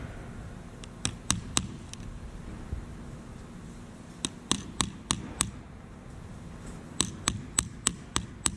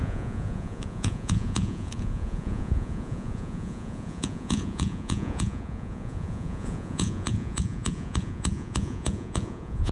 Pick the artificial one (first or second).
second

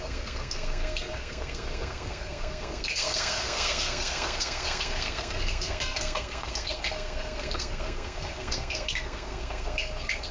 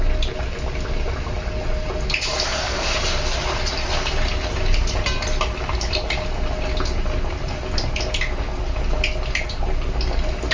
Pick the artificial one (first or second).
first